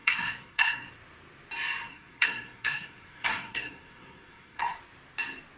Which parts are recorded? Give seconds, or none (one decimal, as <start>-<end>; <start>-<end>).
0.9-1.9; 4.8-5.6